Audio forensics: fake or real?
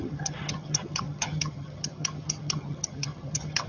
fake